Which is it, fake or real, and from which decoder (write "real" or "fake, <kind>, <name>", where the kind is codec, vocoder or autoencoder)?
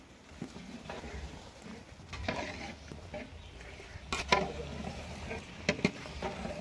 real